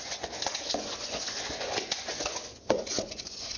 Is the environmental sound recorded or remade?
remade